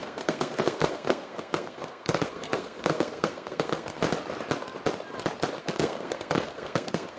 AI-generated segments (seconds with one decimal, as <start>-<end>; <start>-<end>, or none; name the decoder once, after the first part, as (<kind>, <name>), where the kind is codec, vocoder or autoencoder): 0.0-4.0 (codec, SNAC); 5.6-7.2